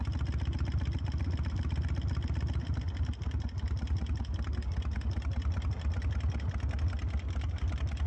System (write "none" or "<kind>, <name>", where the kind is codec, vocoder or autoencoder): none